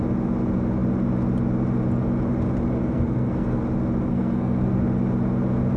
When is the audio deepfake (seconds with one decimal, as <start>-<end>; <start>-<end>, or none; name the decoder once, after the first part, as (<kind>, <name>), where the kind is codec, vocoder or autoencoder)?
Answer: 2.8-3.6 (codec, SNAC); 4.1-4.7